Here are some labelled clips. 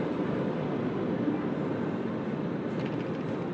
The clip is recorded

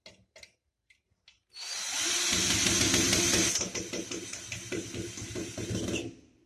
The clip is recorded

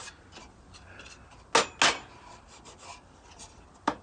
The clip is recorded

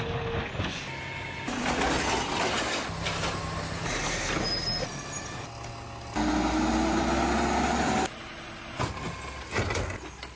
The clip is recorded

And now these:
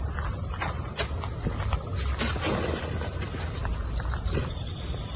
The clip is recorded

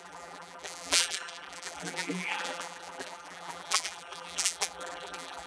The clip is remade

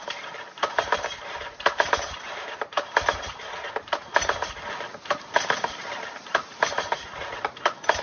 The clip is remade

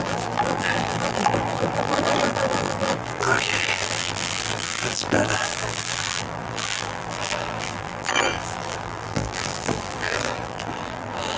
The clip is remade